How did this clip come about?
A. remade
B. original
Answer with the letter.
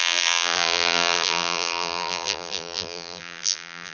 A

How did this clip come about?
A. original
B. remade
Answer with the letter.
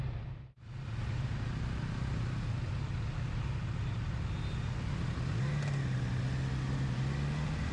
A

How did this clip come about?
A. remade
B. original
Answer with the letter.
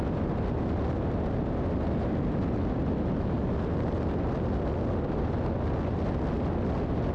B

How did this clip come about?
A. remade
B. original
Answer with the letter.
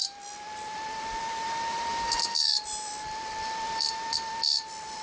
A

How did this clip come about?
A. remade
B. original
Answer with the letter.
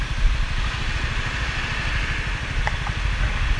B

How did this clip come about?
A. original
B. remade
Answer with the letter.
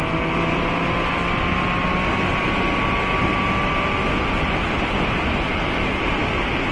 A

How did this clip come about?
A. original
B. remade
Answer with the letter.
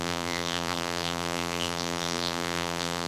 B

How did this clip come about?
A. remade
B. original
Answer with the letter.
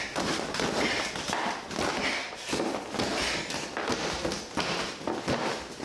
B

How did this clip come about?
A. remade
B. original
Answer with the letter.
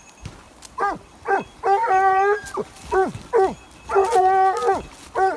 B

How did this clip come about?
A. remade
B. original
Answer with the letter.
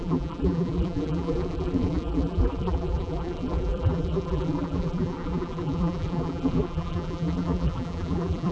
A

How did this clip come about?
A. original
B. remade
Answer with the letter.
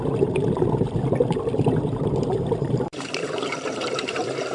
B